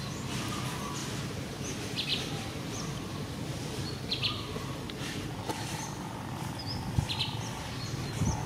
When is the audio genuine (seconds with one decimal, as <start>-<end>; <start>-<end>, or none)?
0.0-2.1; 7.2-8.5